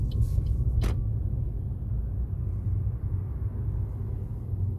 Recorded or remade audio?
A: recorded